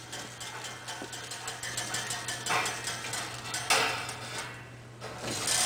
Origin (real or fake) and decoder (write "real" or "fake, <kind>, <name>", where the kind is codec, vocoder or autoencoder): real